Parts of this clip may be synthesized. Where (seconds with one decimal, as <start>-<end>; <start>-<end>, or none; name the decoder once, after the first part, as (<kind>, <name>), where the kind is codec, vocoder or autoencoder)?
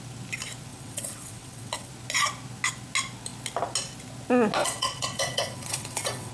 0.7-1.9 (vocoder, WaveNeXt); 4.6-6.3